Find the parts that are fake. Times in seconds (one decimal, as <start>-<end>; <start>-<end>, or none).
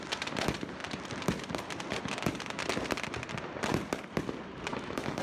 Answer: 4.7-5.2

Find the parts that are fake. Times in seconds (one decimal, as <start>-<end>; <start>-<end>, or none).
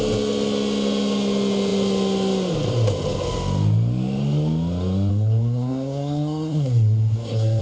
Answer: 5.1-7.6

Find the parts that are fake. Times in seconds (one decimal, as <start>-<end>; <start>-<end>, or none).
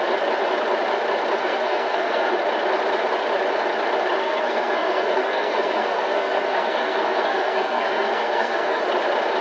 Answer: 1.4-2.3; 4.2-8.8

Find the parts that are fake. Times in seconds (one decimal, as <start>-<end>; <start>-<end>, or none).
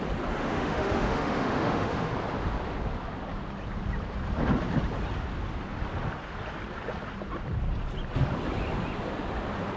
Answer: 0.4-2.1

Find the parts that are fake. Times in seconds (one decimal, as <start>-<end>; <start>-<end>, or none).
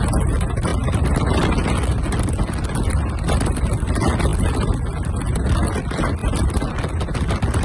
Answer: none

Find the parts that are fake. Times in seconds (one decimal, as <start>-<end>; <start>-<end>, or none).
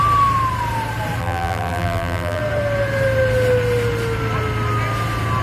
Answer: 1.2-2.4